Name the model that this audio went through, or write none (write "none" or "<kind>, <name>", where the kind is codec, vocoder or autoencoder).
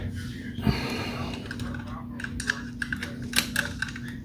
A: none